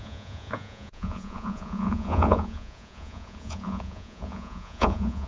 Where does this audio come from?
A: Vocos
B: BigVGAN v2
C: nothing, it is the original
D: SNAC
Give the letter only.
A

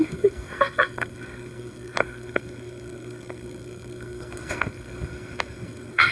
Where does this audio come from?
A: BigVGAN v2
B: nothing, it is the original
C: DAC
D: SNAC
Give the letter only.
D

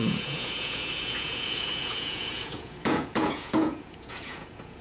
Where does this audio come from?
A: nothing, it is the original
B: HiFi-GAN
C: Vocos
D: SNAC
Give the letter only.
C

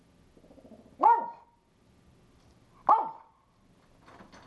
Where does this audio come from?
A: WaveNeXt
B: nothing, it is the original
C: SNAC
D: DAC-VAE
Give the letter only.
B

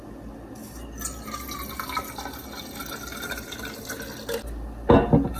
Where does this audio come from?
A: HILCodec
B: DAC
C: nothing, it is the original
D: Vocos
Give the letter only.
C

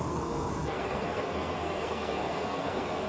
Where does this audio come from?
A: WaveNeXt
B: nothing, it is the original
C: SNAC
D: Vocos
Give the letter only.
C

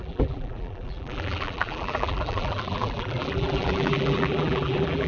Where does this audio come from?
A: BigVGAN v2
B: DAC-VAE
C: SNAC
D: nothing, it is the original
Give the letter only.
A